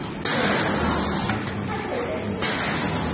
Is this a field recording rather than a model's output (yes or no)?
yes